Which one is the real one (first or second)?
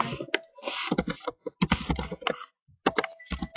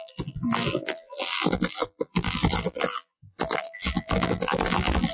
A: first